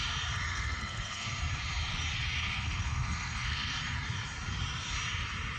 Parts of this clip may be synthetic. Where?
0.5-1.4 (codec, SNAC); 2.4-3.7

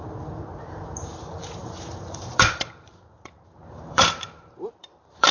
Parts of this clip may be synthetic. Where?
0.0-5.3 (vocoder, BigVGAN v2)

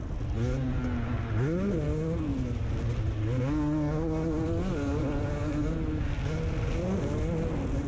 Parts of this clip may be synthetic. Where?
none